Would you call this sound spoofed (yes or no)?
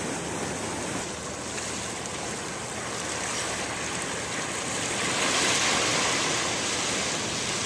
no